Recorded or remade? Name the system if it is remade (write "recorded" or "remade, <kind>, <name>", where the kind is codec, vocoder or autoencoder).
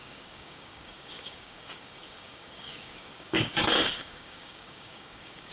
remade, codec, DAC